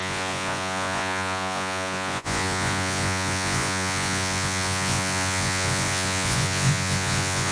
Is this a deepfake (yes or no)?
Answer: yes